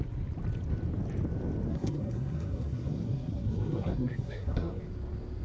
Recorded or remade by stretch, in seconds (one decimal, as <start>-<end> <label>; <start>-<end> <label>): 0.0-1.7 recorded; 1.7-4.8 remade; 4.8-5.4 recorded